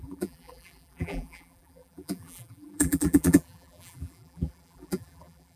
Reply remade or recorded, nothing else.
remade